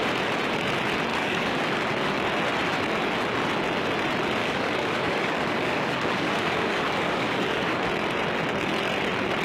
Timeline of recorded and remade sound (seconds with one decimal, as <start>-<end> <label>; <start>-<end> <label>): 0.0-1.1 recorded; 1.1-1.8 remade; 1.8-4.4 recorded; 4.4-7.9 remade; 7.9-9.4 recorded